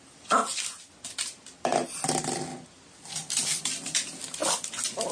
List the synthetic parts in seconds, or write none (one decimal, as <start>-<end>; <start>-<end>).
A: none